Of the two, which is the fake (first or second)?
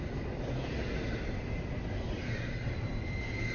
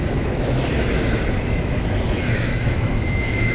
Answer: second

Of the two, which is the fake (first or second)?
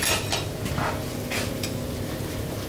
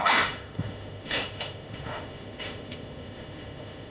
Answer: second